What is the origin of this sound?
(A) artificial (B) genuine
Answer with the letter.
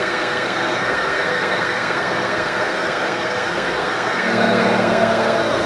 A